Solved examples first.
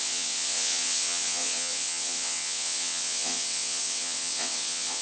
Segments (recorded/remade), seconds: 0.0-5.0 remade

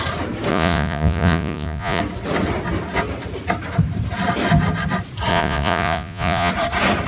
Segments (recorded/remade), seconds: 0.0-0.5 recorded; 0.5-2.0 remade; 2.0-5.3 recorded; 5.3-6.5 remade; 6.5-7.1 recorded

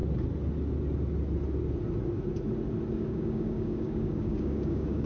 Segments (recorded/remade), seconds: 0.0-2.9 recorded; 2.9-5.1 remade

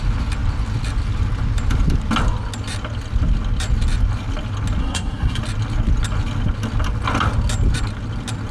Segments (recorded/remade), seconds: 0.0-4.8 recorded; 4.8-5.4 remade; 5.4-8.5 recorded

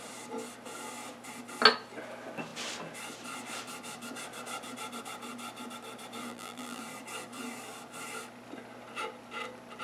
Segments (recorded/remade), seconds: 0.0-6.3 recorded; 6.3-6.8 remade; 6.8-9.8 recorded

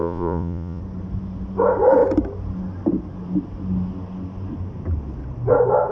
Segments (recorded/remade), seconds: 0.0-0.8 remade; 0.8-5.9 recorded

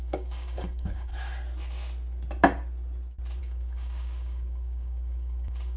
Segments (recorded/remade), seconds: 0.0-1.1 remade; 1.1-3.4 recorded; 3.4-5.8 remade